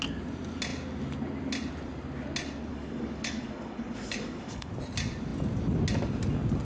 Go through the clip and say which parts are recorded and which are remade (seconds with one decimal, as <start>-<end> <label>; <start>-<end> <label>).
0.0-2.7 recorded; 2.7-4.7 remade; 4.7-6.6 recorded